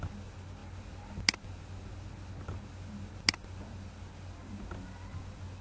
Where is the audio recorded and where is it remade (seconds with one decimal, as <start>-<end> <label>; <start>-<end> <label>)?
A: 0.0-5.6 recorded